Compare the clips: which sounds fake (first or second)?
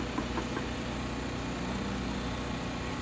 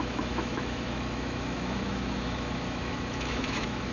second